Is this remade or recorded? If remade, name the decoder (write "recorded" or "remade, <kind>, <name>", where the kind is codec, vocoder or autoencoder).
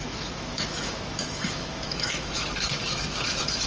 remade, autoencoder, DAC-VAE